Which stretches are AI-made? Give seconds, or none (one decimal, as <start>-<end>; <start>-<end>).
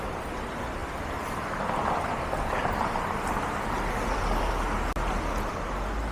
0.8-4.5